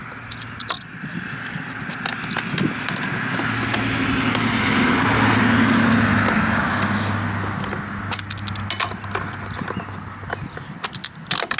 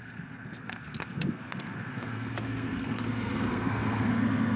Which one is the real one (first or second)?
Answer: first